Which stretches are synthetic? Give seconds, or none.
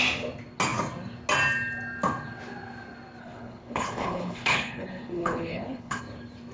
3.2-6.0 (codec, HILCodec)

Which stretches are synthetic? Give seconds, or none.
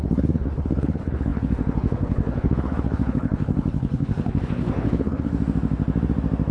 0.0-5.3 (codec, HILCodec)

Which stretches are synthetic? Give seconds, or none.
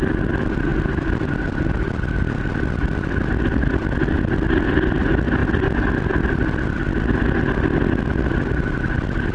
none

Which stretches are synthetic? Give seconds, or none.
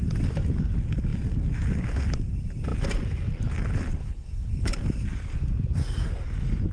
4.0-4.7 (codec, HILCodec)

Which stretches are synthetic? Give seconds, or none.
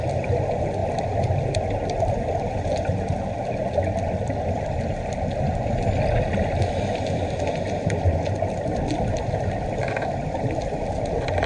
none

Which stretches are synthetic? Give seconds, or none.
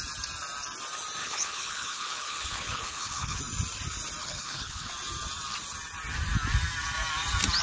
1.2-3.4 (codec, HILCodec); 4.2-4.9